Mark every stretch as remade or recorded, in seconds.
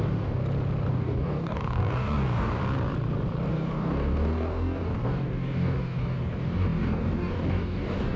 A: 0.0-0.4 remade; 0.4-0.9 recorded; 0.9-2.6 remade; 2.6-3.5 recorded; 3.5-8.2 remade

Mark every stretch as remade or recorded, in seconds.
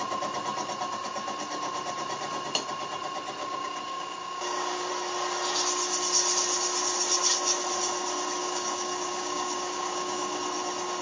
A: 0.0-3.4 recorded; 3.4-4.9 remade; 4.9-8.4 recorded; 8.4-10.4 remade; 10.4-11.0 recorded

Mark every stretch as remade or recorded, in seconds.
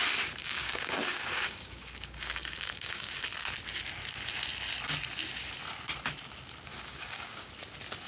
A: 0.0-0.4 recorded; 0.4-3.1 remade; 3.1-6.7 recorded; 6.7-7.5 remade; 7.5-8.1 recorded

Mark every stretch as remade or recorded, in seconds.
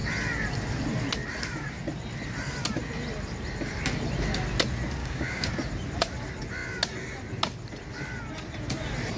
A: 0.0-5.0 recorded; 5.0-5.5 remade; 5.5-9.2 recorded